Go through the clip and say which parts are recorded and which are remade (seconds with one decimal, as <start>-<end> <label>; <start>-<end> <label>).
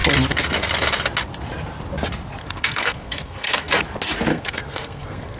0.0-2.4 recorded; 2.4-3.7 remade; 3.7-4.3 recorded; 4.3-5.4 remade